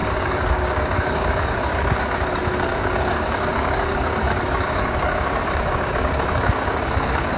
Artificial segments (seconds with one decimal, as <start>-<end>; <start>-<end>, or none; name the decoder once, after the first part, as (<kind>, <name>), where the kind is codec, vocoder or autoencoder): 0.0-7.4 (codec, DAC)